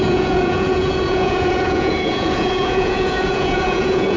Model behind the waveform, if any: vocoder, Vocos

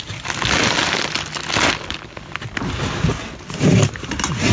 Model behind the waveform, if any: none